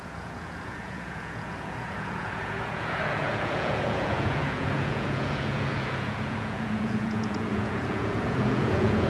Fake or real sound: fake